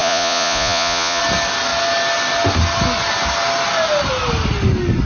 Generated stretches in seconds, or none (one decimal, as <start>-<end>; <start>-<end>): 0.0-1.2